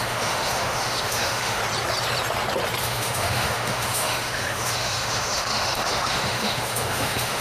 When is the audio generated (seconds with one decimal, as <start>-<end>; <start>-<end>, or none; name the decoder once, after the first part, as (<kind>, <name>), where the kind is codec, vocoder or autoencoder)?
0.0-1.6 (autoencoder, DAC-VAE); 2.8-7.4